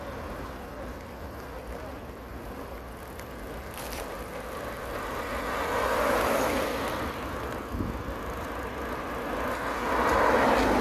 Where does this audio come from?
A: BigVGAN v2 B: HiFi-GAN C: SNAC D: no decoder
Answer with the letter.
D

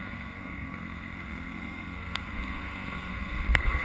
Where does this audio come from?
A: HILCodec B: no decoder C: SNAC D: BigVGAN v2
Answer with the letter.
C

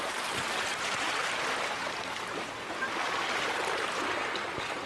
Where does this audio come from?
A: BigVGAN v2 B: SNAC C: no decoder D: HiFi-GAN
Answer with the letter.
C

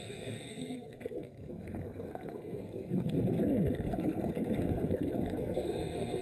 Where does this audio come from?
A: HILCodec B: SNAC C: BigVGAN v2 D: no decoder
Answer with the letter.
B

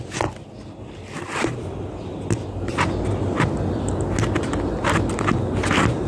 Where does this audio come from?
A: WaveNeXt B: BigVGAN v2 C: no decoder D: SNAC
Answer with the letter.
C